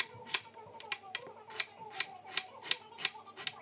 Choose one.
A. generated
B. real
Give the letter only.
B